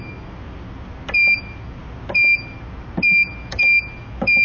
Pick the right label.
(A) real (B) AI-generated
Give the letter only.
A